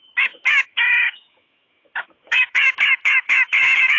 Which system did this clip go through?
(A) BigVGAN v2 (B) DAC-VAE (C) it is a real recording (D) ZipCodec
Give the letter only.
B